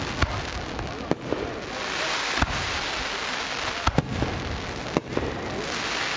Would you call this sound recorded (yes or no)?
yes